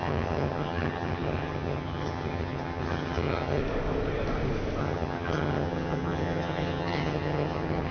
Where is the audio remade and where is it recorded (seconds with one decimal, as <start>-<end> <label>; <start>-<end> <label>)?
0.0-3.6 remade; 3.6-4.8 recorded; 4.8-7.9 remade